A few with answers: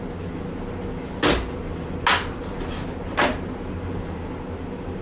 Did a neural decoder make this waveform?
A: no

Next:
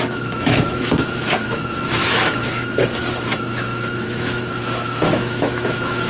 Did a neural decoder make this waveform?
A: yes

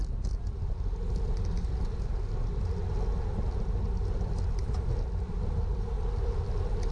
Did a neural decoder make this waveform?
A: no